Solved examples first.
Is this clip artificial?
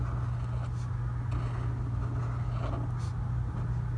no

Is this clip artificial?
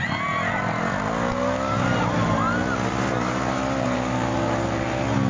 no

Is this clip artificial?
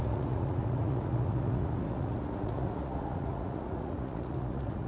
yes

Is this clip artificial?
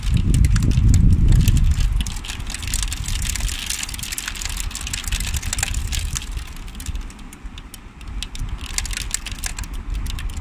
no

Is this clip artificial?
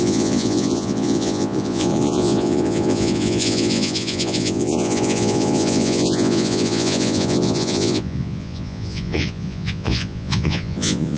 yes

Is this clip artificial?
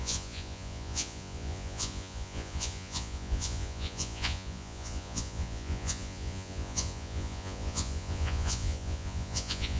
yes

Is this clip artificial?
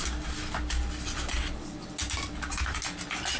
no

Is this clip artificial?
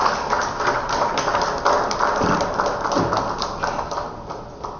no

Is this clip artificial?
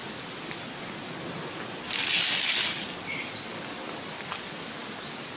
no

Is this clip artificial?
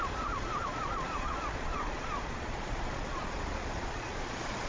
yes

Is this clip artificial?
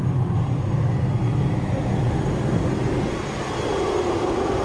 no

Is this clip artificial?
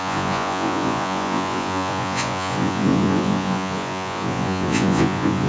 yes